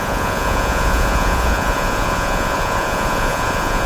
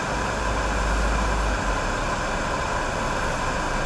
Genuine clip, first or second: second